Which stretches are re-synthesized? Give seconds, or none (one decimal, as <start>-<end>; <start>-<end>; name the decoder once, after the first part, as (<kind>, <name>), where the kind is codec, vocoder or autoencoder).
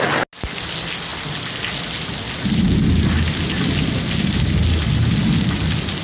none